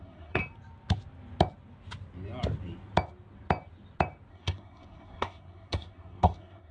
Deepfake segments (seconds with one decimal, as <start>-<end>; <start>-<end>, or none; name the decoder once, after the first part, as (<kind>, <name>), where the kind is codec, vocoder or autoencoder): 0.0-0.4 (codec, SNAC); 4.3-6.7